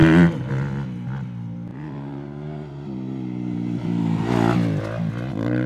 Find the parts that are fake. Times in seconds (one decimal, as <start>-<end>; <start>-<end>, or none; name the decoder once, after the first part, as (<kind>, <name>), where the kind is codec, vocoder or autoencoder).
1.7-4.0 (vocoder, BigVGAN v2)